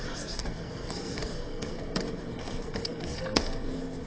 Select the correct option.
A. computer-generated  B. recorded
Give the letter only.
A